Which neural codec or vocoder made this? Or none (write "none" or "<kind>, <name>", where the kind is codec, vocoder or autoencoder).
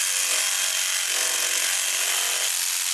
none